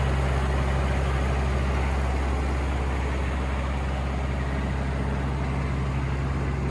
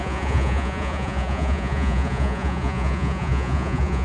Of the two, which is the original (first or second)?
first